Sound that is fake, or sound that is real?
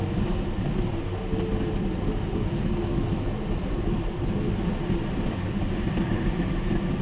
real